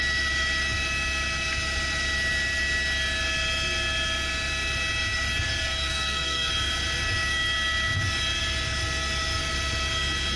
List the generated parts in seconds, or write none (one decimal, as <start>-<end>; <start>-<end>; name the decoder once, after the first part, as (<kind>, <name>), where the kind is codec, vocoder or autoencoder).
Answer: 5.6-6.5 (codec, SNAC)